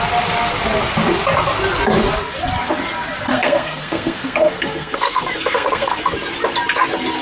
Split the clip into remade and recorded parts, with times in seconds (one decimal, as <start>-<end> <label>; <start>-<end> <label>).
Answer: 0.0-3.3 recorded; 3.3-6.0 remade; 6.0-7.2 recorded